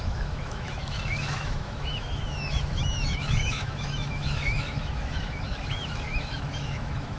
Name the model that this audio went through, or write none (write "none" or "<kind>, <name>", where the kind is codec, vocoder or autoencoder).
autoencoder, DAC-VAE